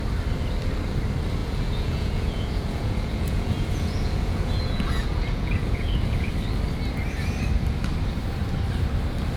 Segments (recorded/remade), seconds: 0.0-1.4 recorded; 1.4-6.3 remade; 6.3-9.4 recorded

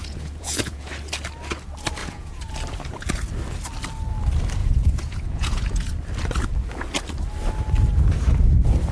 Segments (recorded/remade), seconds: 0.0-0.9 remade; 0.9-2.0 recorded; 2.0-2.5 remade; 2.5-4.6 recorded; 4.6-5.9 remade; 5.9-8.9 recorded

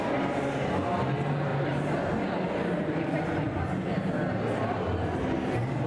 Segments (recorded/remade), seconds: 0.0-1.5 recorded; 1.5-4.3 remade; 4.3-5.9 recorded

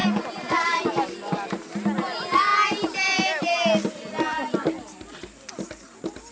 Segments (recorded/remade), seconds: 0.0-6.3 recorded

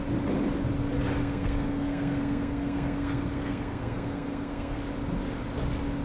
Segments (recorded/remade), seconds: 0.0-1.2 recorded; 1.2-4.8 remade; 4.8-6.0 recorded